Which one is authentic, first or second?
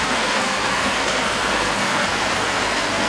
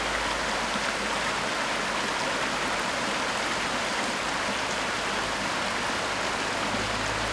second